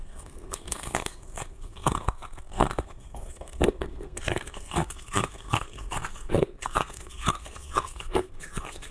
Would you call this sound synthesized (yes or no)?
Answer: yes